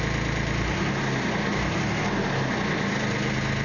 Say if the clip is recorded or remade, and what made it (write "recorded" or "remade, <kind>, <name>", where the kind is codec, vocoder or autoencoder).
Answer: recorded